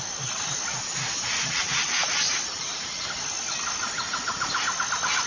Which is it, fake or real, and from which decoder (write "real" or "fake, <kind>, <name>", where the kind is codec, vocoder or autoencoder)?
real